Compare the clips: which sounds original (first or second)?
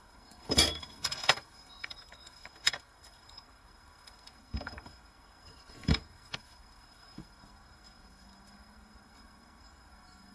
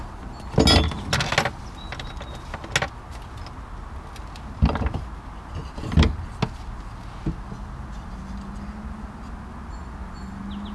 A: second